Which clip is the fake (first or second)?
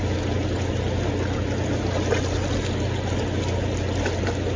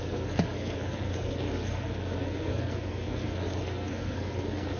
second